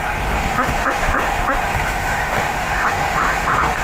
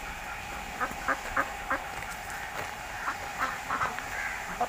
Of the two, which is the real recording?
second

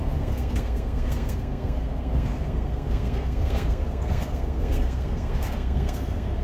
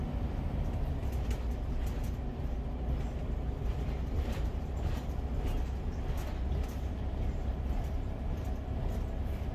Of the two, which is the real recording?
second